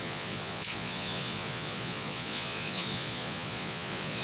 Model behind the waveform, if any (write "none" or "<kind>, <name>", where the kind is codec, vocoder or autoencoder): vocoder, Vocos